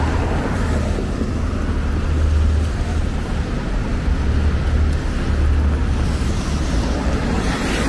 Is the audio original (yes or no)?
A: yes